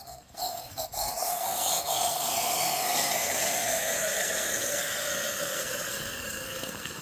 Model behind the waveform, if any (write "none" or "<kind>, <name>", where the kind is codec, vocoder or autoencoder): codec, SNAC